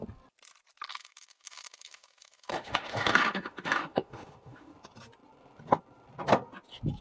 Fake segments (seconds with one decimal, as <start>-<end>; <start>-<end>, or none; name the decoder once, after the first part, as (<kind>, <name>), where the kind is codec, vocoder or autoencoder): 0.9-4.7 (autoencoder, DAC-VAE)